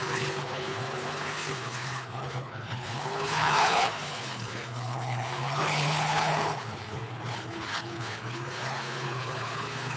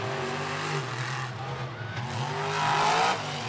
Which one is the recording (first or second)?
second